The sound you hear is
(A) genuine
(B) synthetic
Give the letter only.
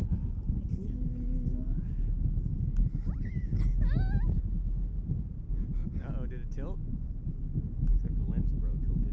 A